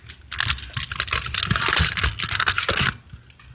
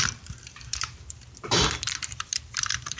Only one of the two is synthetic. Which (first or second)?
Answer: second